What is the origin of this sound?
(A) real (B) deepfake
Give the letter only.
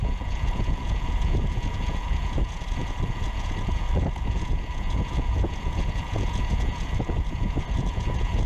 B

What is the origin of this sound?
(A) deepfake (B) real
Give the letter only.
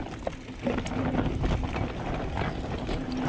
B